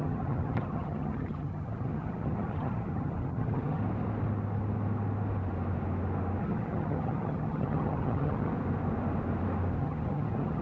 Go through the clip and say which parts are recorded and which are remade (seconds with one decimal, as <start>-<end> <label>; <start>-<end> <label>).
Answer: 0.0-3.8 remade; 3.8-6.4 recorded; 6.4-8.5 remade; 8.5-9.8 recorded; 9.8-10.6 remade